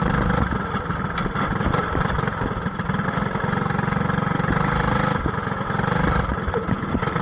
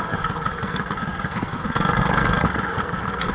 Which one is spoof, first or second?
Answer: second